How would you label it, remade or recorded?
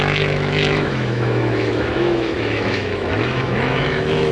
remade